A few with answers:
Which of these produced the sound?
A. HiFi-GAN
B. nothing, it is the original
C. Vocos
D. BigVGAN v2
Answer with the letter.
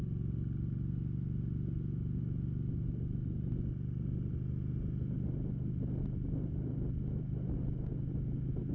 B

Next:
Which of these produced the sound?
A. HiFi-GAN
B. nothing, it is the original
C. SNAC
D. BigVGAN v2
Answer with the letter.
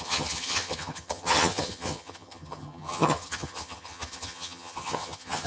A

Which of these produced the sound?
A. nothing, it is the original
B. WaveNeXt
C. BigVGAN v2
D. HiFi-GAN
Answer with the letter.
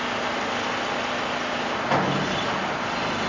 A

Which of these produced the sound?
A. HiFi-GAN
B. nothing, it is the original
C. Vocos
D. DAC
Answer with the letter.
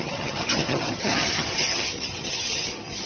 A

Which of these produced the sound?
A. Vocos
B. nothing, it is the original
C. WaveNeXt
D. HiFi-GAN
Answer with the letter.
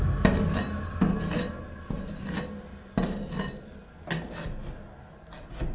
B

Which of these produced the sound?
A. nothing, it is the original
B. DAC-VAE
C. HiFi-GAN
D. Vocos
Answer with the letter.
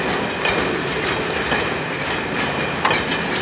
A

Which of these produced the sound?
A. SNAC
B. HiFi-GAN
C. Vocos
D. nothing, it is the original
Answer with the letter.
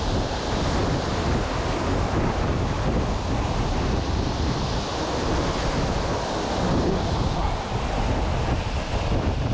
D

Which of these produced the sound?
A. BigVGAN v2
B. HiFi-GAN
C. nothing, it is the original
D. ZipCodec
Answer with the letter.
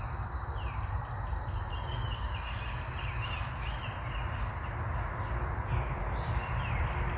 C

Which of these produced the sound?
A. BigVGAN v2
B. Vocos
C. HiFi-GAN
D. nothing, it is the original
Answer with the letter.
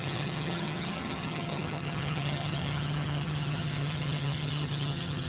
C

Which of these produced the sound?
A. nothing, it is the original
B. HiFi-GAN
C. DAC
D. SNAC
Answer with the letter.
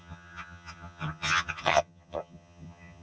B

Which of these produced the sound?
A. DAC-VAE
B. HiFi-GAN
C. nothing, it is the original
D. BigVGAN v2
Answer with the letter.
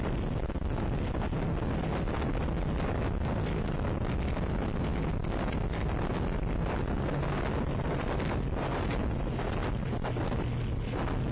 C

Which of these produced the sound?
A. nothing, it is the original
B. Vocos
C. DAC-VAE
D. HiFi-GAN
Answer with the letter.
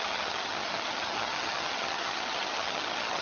D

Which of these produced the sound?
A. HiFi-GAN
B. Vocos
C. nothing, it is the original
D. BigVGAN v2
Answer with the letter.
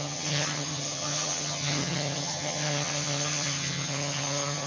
A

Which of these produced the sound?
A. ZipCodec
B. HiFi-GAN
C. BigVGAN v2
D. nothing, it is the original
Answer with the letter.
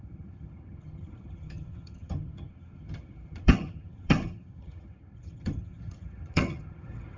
B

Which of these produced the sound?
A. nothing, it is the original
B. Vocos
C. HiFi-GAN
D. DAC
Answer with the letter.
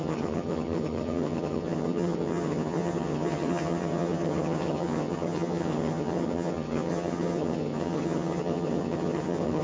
C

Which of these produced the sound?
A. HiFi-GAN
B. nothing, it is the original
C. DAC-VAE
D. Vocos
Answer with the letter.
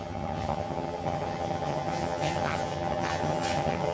A